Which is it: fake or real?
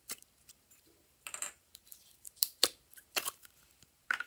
fake